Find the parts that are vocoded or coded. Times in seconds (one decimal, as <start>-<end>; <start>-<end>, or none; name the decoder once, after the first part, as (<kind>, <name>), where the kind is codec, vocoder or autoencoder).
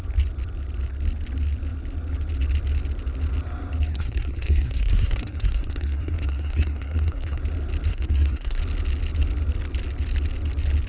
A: 3.9-7.4 (codec, SNAC); 7.9-8.6